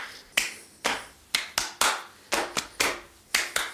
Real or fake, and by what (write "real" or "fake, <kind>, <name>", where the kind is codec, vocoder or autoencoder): real